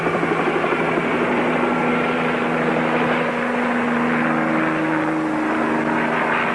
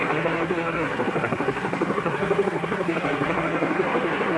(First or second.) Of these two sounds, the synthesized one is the second